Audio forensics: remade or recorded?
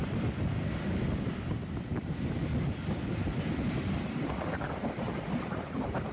remade